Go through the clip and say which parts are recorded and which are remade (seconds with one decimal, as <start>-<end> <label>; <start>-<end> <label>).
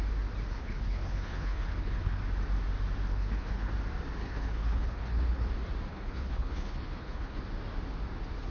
0.0-0.5 recorded; 0.5-2.2 remade; 2.2-3.1 recorded; 3.1-3.7 remade; 3.7-4.2 recorded; 4.2-5.5 remade; 5.5-5.9 recorded; 5.9-7.4 remade; 7.4-8.5 recorded